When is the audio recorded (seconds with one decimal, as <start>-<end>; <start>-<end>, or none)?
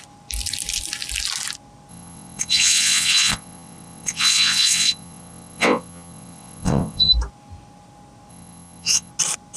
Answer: 0.0-1.9; 7.1-8.3; 9.1-9.6